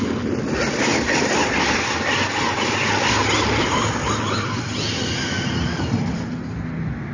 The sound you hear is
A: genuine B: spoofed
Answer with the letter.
A